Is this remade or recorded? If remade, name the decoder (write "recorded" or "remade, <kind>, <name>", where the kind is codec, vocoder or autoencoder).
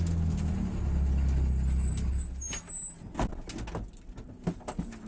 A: recorded